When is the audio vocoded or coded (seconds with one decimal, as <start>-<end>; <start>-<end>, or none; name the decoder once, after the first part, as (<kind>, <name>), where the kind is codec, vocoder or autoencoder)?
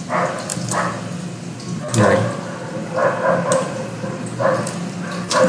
none